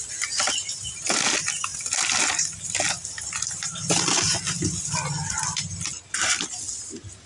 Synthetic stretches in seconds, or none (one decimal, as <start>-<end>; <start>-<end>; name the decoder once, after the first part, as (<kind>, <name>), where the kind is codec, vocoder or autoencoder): none